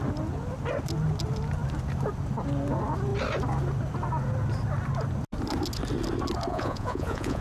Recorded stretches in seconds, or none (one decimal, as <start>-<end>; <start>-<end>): 0.0-6.5